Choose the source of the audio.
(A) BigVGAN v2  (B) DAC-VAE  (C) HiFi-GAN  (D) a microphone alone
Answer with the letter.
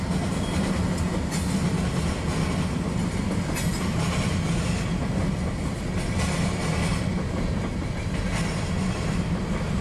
D